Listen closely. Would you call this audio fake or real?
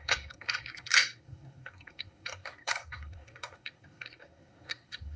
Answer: fake